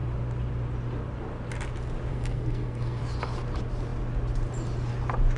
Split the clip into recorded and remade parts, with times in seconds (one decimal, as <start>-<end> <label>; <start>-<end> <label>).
0.0-2.1 recorded; 2.1-3.0 remade; 3.0-5.4 recorded